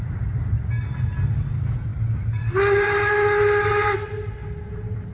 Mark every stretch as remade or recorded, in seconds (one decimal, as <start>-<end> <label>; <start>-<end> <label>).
0.0-5.1 recorded